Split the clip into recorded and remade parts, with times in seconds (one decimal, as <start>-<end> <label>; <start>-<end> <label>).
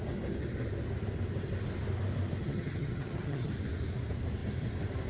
0.0-2.4 recorded; 2.4-3.5 remade; 3.5-5.1 recorded